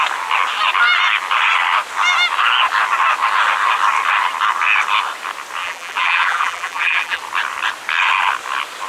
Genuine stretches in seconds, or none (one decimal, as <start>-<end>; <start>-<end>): 0.0-5.6; 7.2-8.9